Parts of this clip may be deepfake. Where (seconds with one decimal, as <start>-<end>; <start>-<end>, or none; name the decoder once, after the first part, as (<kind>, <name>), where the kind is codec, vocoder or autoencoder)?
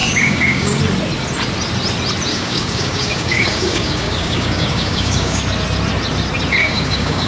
0.0-0.8 (codec, DAC); 2.3-5.4; 6.6-7.3